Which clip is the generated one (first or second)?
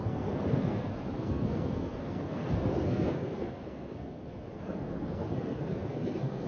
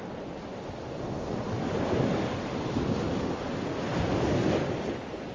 first